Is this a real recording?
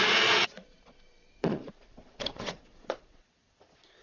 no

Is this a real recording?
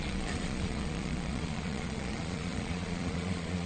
no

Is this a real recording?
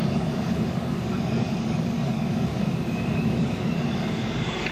no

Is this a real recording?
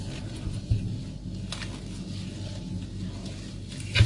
yes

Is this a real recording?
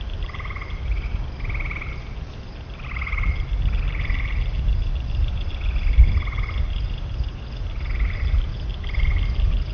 yes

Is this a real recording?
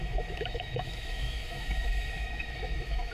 no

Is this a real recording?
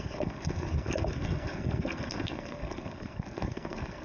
no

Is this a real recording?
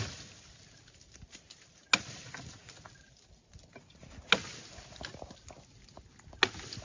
yes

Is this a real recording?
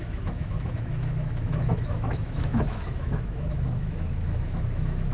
no